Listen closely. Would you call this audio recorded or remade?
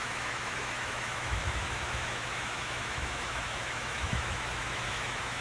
remade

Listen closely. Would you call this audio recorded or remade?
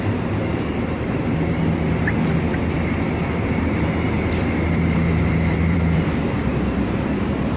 remade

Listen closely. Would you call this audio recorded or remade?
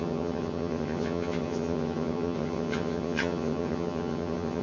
remade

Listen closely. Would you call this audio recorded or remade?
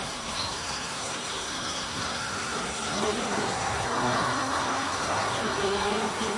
remade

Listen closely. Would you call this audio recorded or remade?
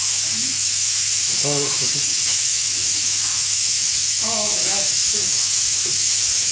remade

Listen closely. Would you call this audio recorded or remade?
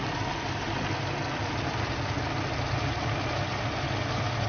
recorded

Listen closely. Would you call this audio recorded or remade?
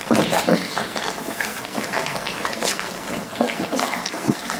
remade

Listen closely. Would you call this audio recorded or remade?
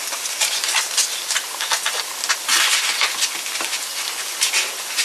recorded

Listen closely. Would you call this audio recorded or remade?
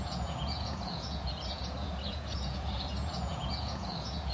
remade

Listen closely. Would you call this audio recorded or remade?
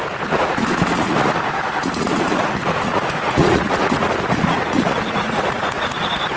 remade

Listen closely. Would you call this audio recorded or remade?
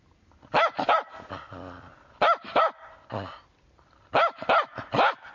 recorded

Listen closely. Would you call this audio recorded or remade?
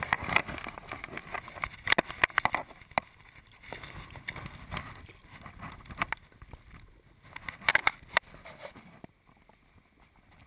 recorded